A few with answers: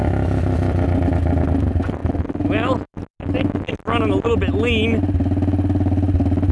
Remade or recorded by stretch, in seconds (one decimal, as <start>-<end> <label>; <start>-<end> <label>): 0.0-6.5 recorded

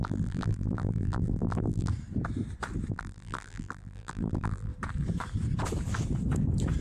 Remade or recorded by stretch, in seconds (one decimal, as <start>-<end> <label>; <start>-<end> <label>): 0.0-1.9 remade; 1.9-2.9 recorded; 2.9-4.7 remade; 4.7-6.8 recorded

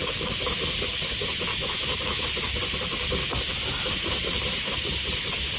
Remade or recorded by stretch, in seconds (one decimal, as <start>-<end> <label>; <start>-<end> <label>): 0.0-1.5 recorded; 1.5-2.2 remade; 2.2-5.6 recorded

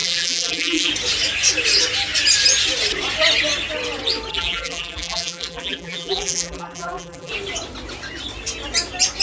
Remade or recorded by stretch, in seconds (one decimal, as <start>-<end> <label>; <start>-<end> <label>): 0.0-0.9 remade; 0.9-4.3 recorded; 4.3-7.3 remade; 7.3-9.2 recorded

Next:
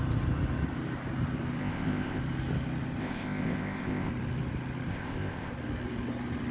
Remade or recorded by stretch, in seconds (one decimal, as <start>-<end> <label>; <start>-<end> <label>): 0.0-1.6 recorded; 1.6-2.2 remade; 2.2-3.0 recorded; 3.0-4.1 remade; 4.1-4.9 recorded; 4.9-5.5 remade; 5.5-6.5 recorded

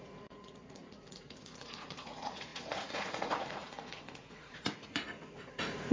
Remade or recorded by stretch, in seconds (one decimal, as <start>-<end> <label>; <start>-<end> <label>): 0.0-5.9 remade